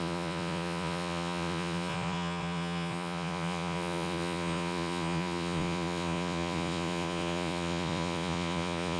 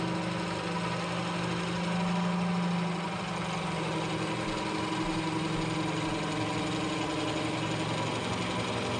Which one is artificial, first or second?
first